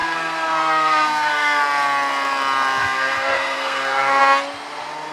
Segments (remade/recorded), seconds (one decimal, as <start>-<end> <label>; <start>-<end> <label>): 0.0-1.6 remade; 1.6-2.8 recorded; 2.8-4.2 remade; 4.2-5.1 recorded